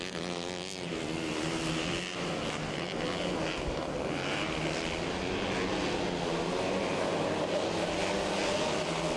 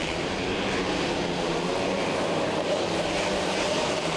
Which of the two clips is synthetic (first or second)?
second